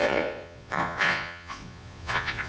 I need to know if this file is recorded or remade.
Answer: remade